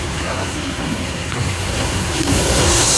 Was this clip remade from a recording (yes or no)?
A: yes